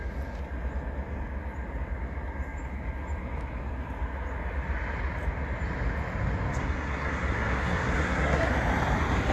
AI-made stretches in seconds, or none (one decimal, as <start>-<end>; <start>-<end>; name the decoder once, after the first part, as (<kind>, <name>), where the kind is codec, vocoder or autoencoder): 6.6-8.5 (codec, SNAC)